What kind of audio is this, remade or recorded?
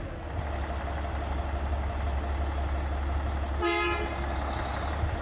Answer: recorded